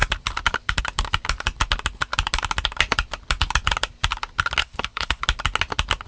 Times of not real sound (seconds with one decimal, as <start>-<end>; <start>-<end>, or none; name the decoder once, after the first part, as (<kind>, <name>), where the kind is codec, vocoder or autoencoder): 4.6-5.2 (codec, HILCodec)